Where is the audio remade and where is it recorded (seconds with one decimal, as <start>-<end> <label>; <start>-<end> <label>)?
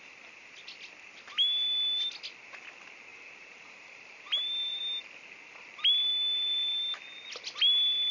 0.0-3.1 recorded; 3.1-4.8 remade; 4.8-8.1 recorded